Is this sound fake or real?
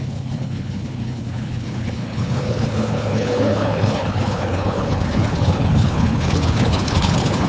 fake